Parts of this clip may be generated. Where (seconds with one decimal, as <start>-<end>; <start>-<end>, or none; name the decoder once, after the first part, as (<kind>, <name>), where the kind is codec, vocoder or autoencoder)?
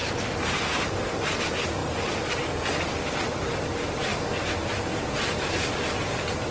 none